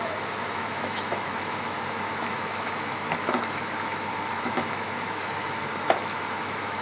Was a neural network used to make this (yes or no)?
yes